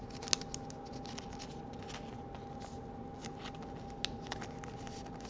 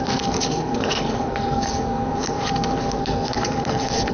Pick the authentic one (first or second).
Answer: first